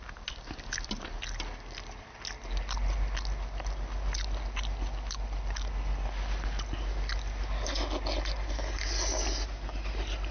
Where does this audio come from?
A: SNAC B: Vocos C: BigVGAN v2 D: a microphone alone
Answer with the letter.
D